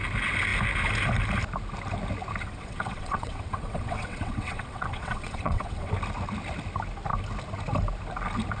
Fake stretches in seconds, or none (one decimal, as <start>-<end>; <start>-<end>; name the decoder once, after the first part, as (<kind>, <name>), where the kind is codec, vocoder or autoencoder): 2.4-5.9 (vocoder, WaveNeXt)